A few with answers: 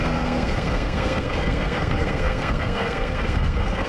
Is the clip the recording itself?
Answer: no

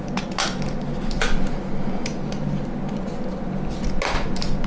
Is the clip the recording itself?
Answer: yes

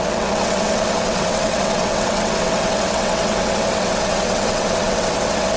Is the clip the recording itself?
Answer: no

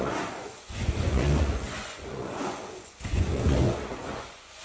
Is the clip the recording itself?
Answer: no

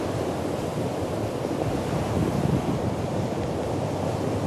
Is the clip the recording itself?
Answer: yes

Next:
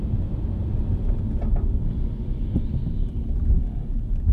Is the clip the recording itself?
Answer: yes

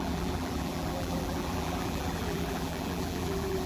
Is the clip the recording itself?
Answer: no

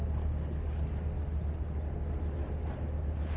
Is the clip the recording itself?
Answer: yes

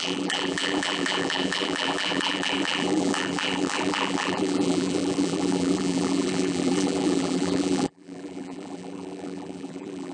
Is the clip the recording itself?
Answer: no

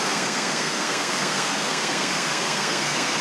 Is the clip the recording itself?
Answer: no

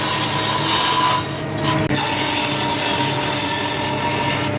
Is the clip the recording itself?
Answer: yes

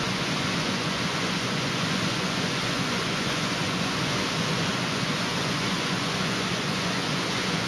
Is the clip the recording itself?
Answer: no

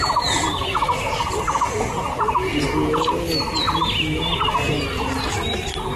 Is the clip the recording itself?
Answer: yes